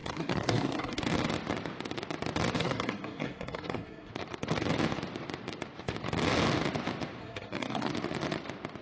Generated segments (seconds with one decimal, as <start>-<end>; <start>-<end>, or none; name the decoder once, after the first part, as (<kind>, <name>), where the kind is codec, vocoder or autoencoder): 0.0-1.0 (codec, SNAC); 2.6-4.1; 7.2-7.9